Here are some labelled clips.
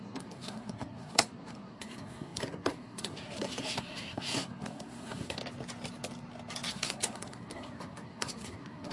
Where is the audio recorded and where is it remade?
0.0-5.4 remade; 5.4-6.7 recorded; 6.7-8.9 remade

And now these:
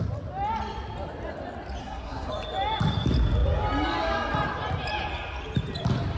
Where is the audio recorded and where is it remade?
0.0-1.8 recorded; 1.8-2.3 remade; 2.3-6.2 recorded

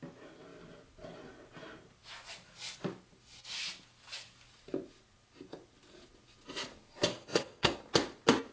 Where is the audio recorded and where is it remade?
0.0-7.1 recorded; 7.1-7.7 remade; 7.7-8.5 recorded

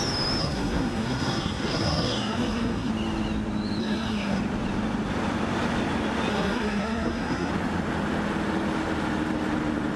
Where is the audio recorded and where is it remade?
0.0-0.4 recorded; 0.4-2.9 remade; 2.9-3.8 recorded; 3.8-4.4 remade; 4.4-6.3 recorded; 6.3-7.5 remade; 7.5-10.0 recorded

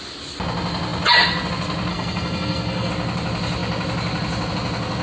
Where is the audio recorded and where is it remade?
0.0-1.9 recorded; 1.9-2.9 remade; 2.9-5.0 recorded